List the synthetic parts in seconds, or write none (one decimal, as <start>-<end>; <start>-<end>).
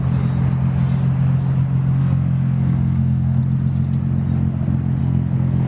2.0-3.4; 5.0-5.7